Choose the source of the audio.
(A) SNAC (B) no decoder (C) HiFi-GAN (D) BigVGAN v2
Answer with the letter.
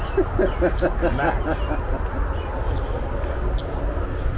B